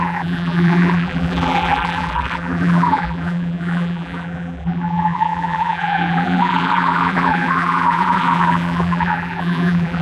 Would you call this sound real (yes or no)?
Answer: no